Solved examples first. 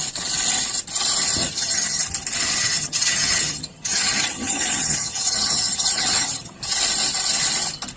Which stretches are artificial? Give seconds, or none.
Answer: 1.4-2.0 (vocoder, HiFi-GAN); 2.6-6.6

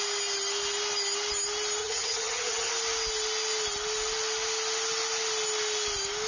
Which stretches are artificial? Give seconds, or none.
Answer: 1.8-2.7 (vocoder, HiFi-GAN)

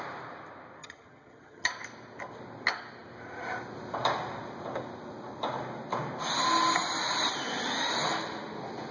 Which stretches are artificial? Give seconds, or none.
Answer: 0.8-1.7 (vocoder, HiFi-GAN)

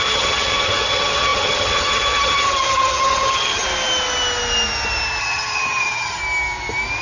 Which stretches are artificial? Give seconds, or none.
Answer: 0.0-3.6 (vocoder, HiFi-GAN); 5.2-6.2

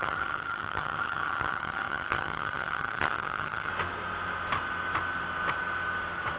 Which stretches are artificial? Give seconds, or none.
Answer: 0.0-3.7 (vocoder, HiFi-GAN)

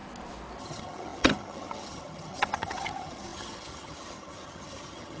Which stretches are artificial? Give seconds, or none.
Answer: 0.6-5.2 (vocoder, HiFi-GAN)

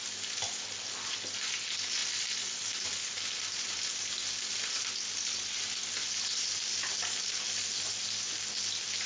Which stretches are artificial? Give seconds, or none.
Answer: none